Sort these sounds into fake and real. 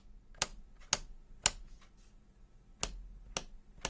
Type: real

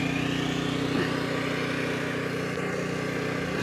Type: real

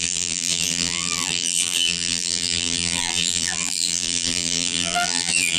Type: fake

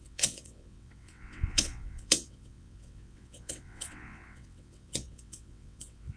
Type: fake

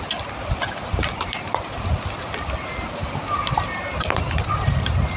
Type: fake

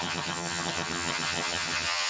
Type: fake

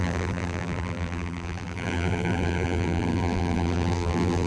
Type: fake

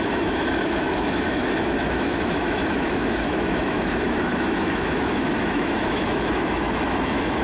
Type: fake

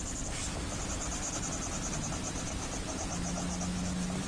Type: real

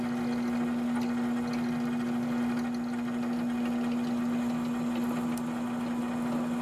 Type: real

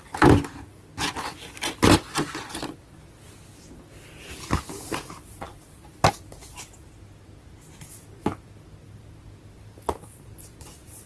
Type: real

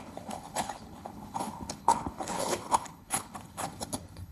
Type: fake